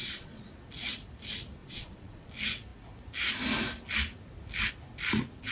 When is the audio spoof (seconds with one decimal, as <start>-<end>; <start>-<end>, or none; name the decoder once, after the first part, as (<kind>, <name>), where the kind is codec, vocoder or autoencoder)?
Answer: 0.0-0.5 (vocoder, Vocos); 1.6-2.3